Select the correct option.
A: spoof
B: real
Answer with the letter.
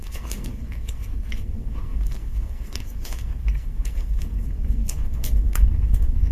A